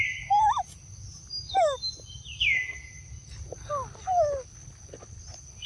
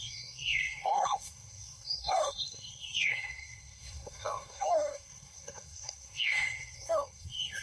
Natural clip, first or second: first